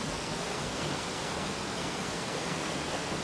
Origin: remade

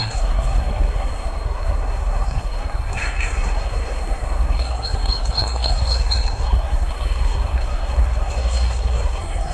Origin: remade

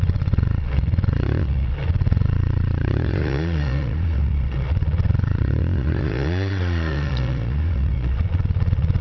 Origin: remade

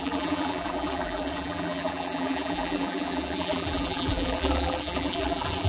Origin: remade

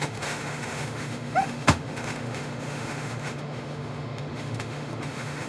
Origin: remade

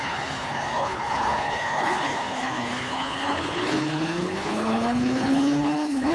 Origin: remade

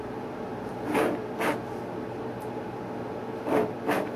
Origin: recorded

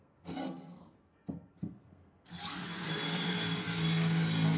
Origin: remade